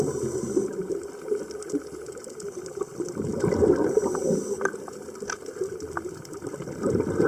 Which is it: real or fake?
real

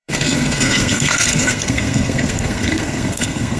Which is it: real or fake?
fake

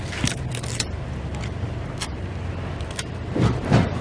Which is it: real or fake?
real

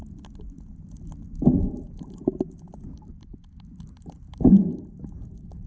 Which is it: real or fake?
real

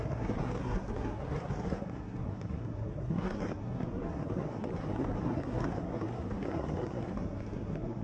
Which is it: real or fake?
fake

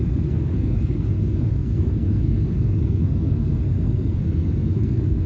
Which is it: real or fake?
fake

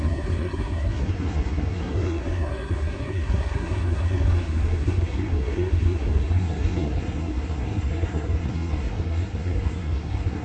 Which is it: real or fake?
fake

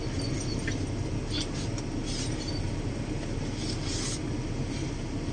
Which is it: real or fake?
real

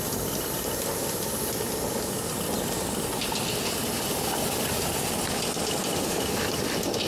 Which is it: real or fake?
real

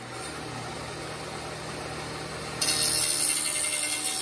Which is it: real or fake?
real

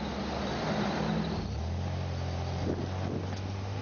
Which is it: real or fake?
real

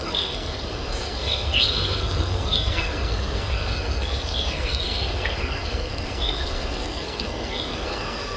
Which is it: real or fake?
fake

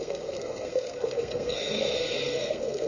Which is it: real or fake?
fake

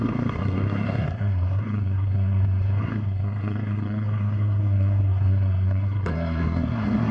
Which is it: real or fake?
fake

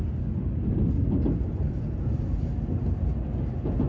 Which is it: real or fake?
real